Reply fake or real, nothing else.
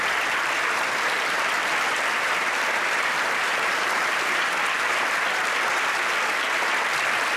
fake